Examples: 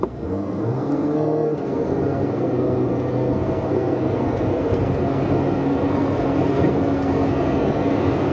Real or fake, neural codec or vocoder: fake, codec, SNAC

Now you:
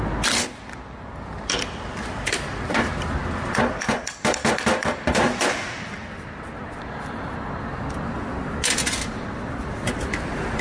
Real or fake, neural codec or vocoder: real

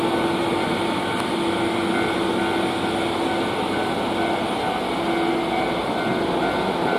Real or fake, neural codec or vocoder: real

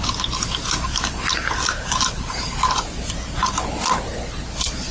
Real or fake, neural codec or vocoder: real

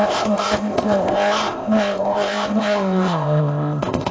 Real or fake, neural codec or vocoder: fake, codec, ZipCodec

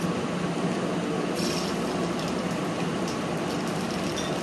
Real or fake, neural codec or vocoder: real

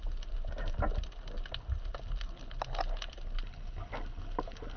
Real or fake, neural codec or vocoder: real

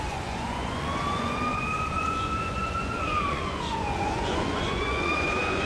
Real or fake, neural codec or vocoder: fake, vocoder, Vocos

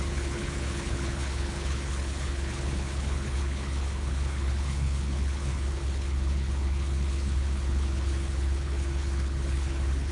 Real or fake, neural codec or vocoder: fake, codec, HILCodec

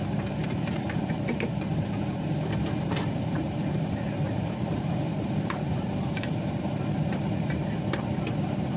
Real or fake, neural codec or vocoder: fake, vocoder, BigVGAN v2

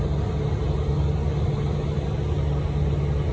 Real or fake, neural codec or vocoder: real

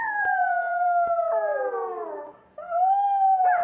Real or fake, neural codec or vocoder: fake, codec, DAC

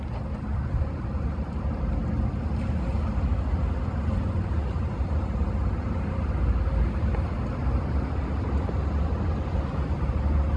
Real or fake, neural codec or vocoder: real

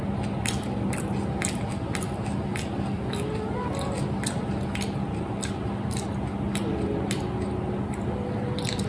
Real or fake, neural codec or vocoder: real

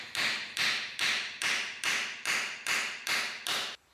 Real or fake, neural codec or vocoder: fake, vocoder, BigVGAN v2